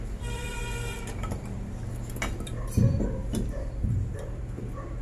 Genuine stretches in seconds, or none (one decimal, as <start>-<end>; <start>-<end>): 0.6-2.3